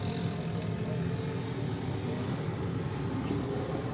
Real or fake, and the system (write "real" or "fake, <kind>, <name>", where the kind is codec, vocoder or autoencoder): real